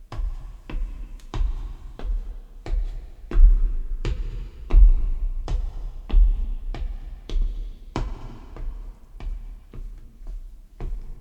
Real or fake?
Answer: fake